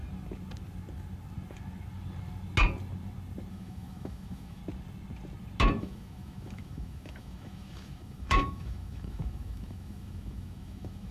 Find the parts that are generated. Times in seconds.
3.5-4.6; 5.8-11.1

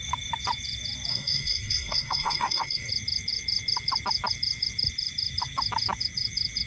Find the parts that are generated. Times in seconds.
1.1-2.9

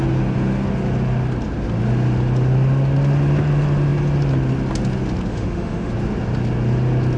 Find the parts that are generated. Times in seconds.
5.3-5.9

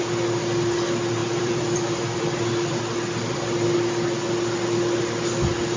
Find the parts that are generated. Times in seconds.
1.2-2.8

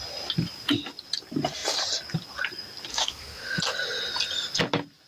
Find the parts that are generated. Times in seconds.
2.9-3.6